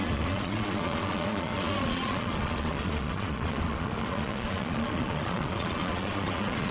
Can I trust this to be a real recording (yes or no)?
no